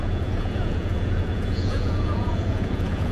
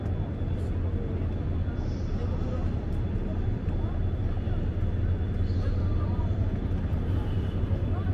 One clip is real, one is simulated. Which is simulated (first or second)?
first